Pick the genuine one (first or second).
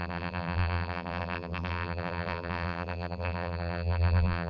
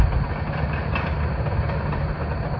second